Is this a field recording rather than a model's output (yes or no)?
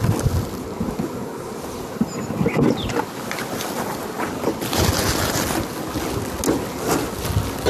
yes